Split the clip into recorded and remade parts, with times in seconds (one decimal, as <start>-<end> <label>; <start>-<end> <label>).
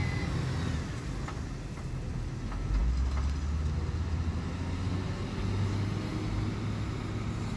0.0-7.6 recorded